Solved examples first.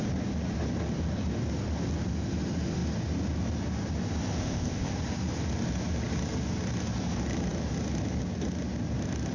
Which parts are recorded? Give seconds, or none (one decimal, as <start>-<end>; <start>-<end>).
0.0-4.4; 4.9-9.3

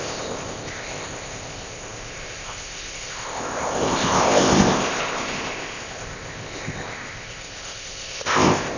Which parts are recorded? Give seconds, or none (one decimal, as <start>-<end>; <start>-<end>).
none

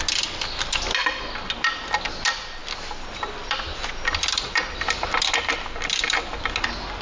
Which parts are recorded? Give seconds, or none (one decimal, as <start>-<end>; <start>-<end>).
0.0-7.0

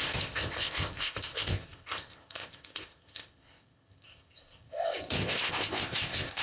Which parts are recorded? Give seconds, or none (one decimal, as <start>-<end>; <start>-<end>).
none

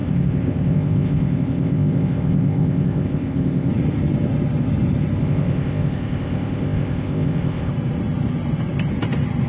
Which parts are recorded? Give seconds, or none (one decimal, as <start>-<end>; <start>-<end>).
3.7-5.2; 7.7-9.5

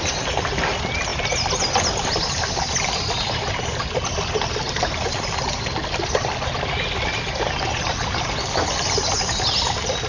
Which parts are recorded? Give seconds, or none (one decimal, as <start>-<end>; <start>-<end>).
0.0-10.1